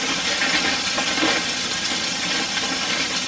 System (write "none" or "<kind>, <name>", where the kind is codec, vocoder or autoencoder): none